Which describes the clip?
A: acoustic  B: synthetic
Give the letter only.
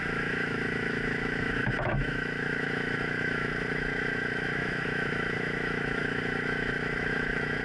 B